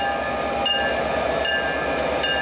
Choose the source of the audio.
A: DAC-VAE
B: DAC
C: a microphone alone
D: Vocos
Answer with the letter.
C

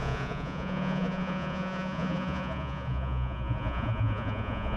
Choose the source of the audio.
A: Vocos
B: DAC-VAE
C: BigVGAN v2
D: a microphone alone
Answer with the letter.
A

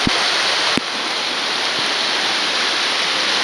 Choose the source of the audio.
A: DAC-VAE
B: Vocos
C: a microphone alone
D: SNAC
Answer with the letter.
C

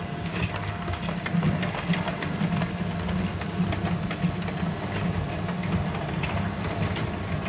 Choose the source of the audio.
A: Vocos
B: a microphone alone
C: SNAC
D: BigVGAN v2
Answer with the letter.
B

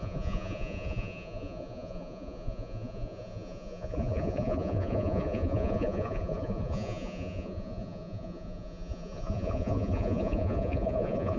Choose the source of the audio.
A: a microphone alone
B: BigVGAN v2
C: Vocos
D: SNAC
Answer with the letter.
C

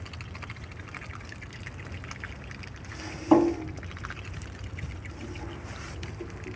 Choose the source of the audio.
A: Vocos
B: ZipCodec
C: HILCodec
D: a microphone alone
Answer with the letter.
D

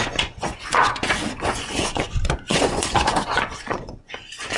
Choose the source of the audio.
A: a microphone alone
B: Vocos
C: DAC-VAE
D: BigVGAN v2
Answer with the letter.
B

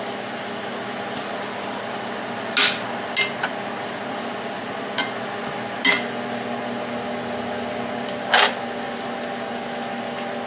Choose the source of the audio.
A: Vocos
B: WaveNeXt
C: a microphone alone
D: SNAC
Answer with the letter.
C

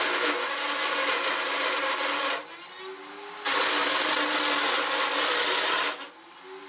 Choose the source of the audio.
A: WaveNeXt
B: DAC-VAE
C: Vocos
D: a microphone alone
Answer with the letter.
D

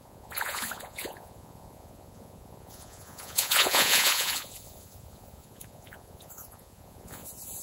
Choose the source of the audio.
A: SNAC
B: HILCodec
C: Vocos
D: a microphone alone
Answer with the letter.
C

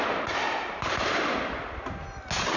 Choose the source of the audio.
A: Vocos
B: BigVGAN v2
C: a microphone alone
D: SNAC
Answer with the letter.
C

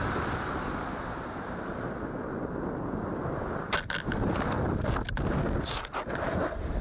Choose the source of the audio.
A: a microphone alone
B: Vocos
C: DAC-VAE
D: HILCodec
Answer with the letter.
A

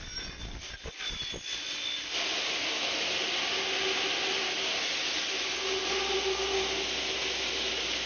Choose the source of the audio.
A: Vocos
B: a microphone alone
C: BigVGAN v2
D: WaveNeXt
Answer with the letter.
B